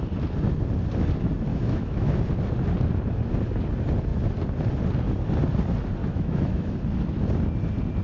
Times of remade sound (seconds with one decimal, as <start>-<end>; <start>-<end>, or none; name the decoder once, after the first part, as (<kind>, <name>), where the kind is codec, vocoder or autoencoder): 1.5-2.2 (autoencoder, DAC-VAE); 6.0-6.7

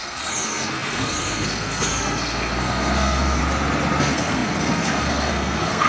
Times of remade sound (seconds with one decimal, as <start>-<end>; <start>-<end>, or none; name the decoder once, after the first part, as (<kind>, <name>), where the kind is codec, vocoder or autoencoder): 0.0-3.4 (codec, SNAC); 4.0-5.9

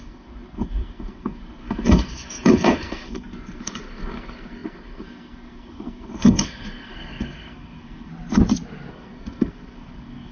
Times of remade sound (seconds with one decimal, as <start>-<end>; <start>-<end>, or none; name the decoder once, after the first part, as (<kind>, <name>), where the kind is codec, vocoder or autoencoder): 0.0-8.1 (codec, SNAC); 8.9-10.3

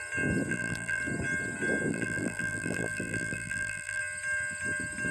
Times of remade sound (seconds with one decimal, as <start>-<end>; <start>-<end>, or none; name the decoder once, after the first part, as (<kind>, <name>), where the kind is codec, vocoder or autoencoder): 0.5-1.0 (vocoder, BigVGAN v2); 1.9-4.0

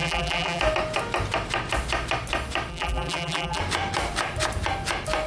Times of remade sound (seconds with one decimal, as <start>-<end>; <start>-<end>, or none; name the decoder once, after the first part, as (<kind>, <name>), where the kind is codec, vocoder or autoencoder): 0.0-0.6 (vocoder, BigVGAN v2); 2.7-3.6

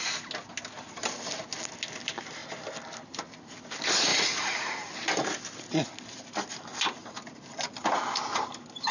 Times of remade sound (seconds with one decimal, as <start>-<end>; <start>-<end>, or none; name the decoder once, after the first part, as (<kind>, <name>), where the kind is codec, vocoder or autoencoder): 4.1-4.9 (vocoder, Vocos)

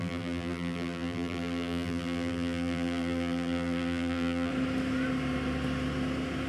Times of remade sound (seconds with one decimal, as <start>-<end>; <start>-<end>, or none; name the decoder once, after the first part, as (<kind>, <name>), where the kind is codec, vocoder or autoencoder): 0.0-4.5 (vocoder, BigVGAN v2)